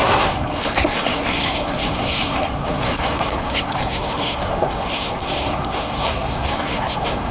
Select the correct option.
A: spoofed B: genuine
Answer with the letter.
A